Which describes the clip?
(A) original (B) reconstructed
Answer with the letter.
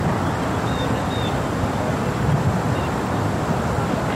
A